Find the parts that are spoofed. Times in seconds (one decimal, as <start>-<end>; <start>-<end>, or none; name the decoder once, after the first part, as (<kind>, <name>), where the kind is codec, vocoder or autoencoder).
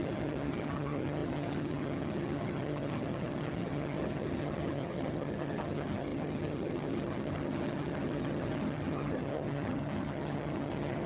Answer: 0.0-11.1 (vocoder, HiFi-GAN)